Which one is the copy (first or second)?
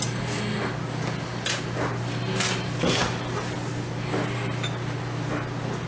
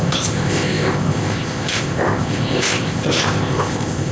second